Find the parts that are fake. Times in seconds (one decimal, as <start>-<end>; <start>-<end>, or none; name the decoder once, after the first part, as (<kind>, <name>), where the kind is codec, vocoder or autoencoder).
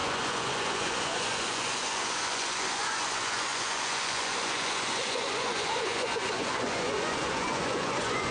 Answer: 0.0-8.3 (vocoder, Vocos)